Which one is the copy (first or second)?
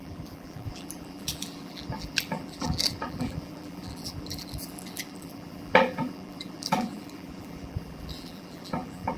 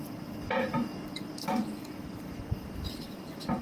first